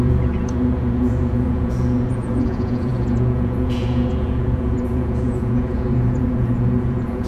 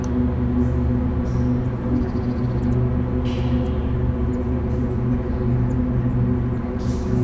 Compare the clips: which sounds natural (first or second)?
second